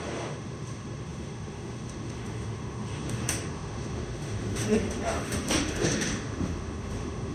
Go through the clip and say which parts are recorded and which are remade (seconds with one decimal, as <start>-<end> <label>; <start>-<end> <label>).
0.0-7.3 remade